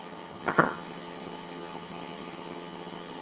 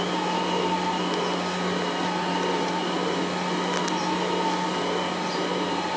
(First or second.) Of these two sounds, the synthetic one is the first